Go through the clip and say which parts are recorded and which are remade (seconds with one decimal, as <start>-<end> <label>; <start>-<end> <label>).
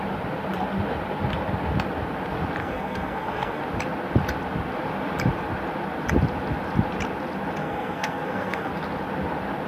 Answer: 0.0-2.6 recorded; 2.6-3.6 remade; 3.6-7.6 recorded; 7.6-8.7 remade; 8.7-9.7 recorded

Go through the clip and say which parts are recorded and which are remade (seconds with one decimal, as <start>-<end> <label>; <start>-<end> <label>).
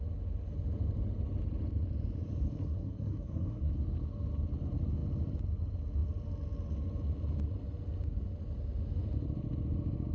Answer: 0.0-2.6 recorded; 2.6-3.7 remade; 3.7-10.1 recorded